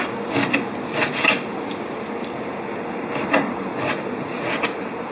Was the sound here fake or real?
real